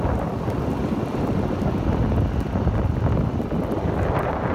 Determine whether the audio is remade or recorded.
recorded